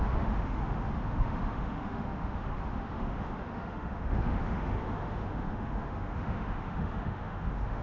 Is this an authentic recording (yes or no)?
no